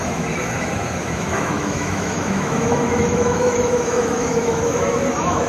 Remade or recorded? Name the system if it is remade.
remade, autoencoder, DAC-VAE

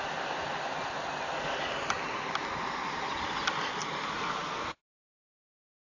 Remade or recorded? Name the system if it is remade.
recorded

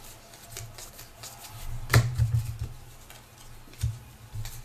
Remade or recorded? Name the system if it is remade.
recorded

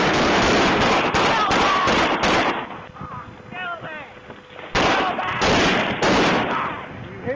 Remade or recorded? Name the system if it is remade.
recorded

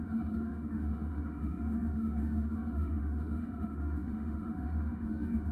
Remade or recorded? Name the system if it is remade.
remade, autoencoder, DAC-VAE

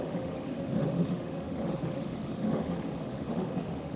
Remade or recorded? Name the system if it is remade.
remade, autoencoder, DAC-VAE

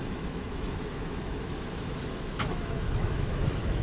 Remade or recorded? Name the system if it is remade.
remade, autoencoder, DAC-VAE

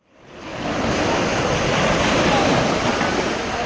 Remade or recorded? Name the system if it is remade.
recorded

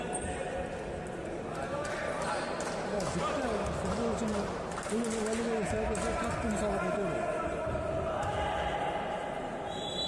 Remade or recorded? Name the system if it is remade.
recorded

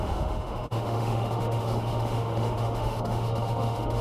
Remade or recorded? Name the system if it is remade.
remade, autoencoder, DAC-VAE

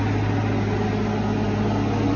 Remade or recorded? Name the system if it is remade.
recorded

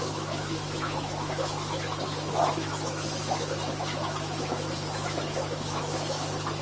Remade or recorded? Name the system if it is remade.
remade, autoencoder, DAC-VAE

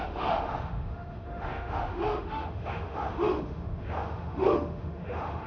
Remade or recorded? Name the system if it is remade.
remade, autoencoder, DAC-VAE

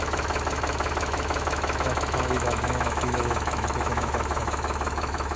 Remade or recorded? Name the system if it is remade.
remade, autoencoder, DAC-VAE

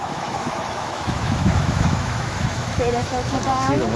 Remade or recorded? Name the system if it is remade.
remade, autoencoder, DAC-VAE